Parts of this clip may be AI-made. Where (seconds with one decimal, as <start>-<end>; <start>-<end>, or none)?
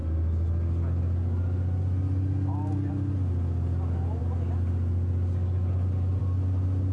none